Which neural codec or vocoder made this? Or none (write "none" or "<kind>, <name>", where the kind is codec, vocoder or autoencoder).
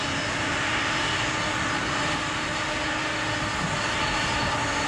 none